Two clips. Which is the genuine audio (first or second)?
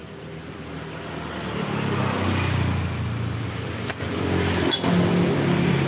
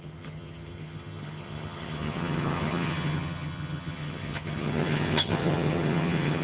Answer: first